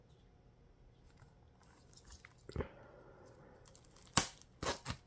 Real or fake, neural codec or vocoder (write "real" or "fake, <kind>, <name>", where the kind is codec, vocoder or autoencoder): real